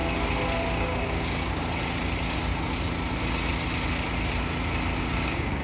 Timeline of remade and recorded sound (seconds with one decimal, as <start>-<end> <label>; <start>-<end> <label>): 0.0-0.8 recorded; 0.8-1.6 remade; 1.6-5.0 recorded; 5.0-5.6 remade